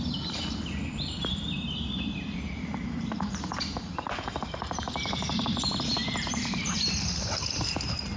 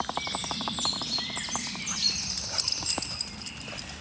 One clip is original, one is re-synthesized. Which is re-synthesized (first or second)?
first